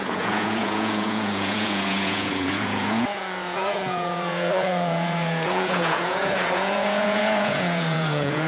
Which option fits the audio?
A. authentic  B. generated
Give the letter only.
B